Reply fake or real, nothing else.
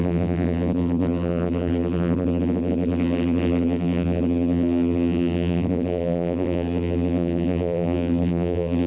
fake